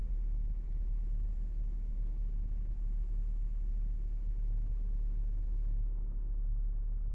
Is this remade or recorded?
recorded